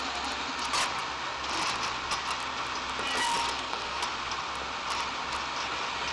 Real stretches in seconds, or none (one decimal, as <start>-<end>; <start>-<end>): 0.0-3.5; 4.0-6.1

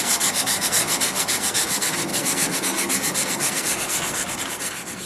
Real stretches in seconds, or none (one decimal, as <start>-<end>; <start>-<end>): none

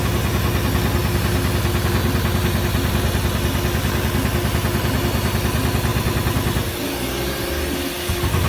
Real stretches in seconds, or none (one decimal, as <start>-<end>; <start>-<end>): 0.0-8.5

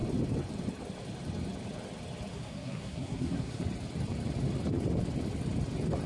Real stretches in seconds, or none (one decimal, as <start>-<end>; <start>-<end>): 0.0-2.3; 3.6-6.1